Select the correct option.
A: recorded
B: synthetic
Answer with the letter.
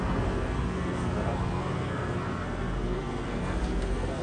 B